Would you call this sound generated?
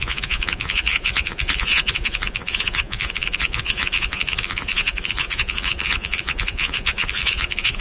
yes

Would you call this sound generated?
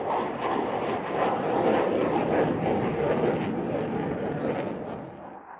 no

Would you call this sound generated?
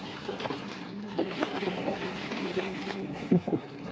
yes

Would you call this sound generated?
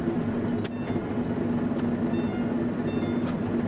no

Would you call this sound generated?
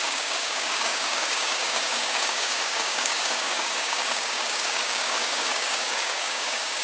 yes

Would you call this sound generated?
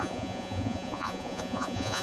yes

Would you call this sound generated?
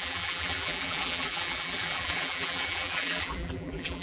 yes